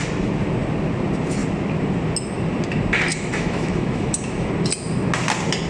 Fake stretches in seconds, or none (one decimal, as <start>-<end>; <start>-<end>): 3.1-4.5